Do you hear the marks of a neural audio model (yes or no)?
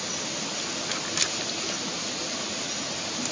no